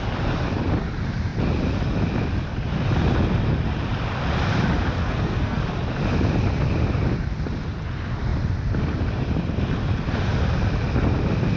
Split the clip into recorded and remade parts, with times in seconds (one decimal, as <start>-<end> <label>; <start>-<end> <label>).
0.0-5.0 recorded; 5.0-5.6 remade; 5.6-11.6 recorded

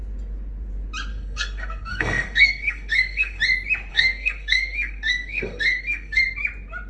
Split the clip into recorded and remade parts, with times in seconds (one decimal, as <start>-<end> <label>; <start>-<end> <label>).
0.0-1.1 recorded; 1.1-3.4 remade; 3.4-3.9 recorded; 3.9-6.2 remade; 6.2-6.9 recorded

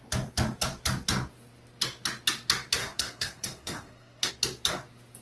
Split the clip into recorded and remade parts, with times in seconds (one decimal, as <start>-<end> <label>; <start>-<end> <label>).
0.0-2.8 recorded; 2.8-4.3 remade; 4.3-5.2 recorded